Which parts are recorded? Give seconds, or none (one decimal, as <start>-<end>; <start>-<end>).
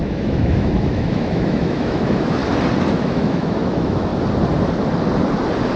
2.4-2.9; 4.1-5.8